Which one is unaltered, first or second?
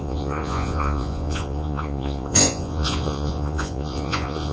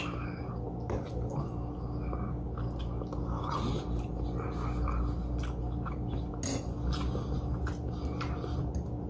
second